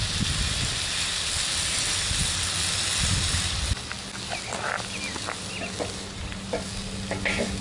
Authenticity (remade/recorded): recorded